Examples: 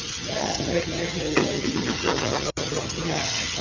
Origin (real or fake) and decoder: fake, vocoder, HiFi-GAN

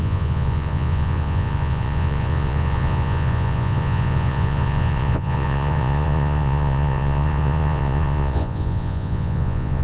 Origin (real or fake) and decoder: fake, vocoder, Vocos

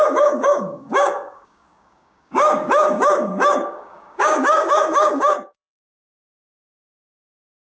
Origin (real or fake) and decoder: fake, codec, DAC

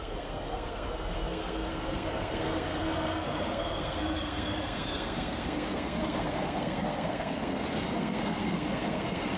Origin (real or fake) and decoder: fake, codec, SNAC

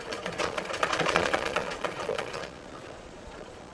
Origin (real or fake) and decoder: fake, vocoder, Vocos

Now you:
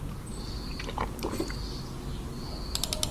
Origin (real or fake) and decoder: real